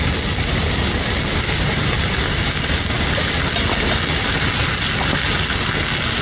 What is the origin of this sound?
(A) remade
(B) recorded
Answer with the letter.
B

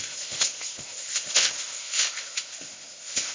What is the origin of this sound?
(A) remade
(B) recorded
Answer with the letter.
A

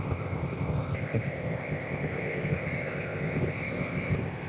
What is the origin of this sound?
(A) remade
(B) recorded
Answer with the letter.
A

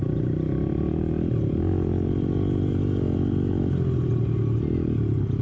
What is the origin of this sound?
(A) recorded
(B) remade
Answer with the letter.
A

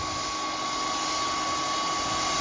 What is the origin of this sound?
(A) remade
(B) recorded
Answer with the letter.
B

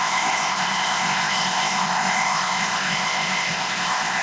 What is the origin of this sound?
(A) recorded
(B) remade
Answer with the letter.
B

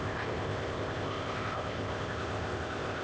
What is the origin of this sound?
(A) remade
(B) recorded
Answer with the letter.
A